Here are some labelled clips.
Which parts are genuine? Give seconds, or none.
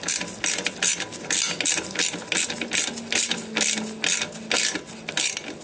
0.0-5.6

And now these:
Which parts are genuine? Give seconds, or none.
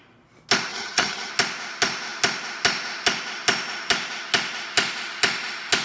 0.0-0.7; 1.3-5.8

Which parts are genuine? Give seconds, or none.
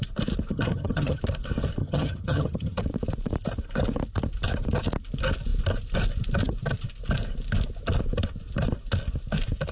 0.0-0.5; 1.2-1.8; 2.8-9.7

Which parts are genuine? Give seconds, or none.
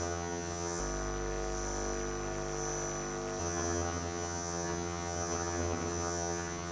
0.8-3.4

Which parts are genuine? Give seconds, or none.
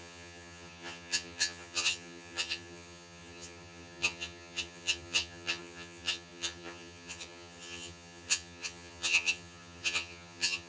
none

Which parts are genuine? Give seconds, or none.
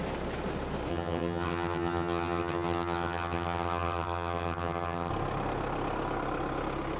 0.0-0.9; 5.1-7.0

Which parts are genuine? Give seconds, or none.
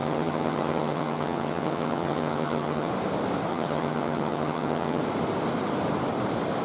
2.9-3.5; 5.0-6.6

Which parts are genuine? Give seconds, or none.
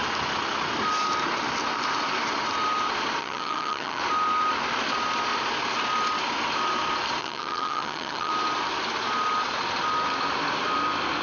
0.0-3.2; 4.0-7.2; 8.3-11.2